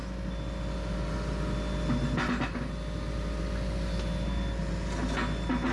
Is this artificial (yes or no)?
no